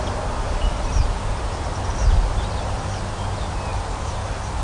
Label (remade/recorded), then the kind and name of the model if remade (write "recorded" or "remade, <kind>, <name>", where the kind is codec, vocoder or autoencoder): recorded